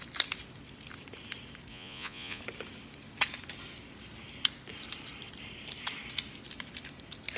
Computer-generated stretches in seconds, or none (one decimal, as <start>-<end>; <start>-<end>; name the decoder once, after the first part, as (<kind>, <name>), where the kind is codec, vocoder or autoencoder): 1.7-2.4 (vocoder, Vocos)